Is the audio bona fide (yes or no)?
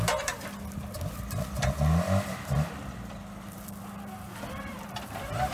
no